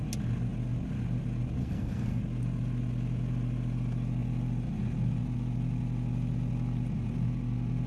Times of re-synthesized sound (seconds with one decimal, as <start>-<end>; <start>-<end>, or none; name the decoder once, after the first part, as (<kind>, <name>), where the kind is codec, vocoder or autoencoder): 1.6-2.2 (codec, SNAC)